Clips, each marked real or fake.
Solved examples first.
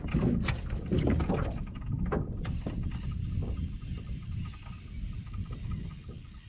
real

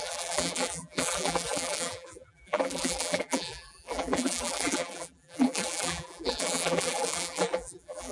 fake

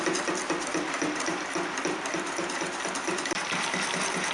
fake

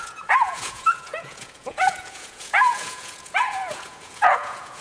fake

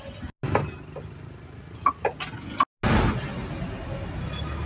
real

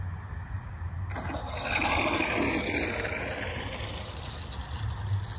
real